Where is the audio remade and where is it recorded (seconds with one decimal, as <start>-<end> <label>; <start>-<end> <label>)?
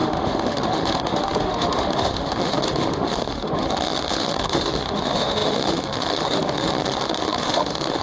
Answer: 0.0-8.0 remade